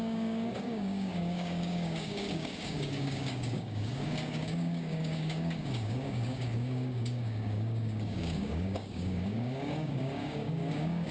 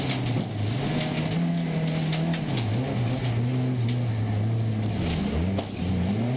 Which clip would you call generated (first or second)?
first